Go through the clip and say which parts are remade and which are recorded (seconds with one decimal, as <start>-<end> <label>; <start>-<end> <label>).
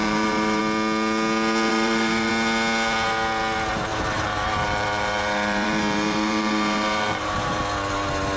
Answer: 0.0-0.6 remade; 0.6-1.7 recorded; 1.7-2.3 remade; 2.3-3.9 recorded; 3.9-7.6 remade; 7.6-8.4 recorded